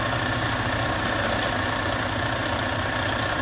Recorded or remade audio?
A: recorded